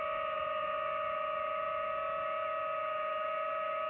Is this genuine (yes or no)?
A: yes